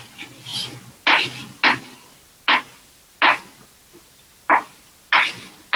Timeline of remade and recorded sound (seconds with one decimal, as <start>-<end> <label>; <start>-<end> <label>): 0.0-5.8 recorded